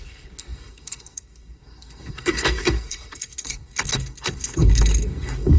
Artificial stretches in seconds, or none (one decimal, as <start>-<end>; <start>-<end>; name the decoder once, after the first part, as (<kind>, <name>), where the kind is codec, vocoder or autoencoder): 0.0-5.6 (codec, SNAC)